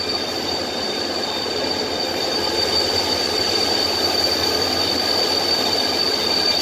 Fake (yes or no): no